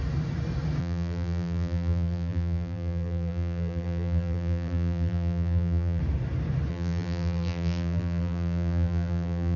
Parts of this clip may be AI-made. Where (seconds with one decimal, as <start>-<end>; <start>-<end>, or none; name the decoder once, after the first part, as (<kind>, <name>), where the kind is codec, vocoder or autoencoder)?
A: 0.8-6.0 (vocoder, BigVGAN v2); 6.7-9.6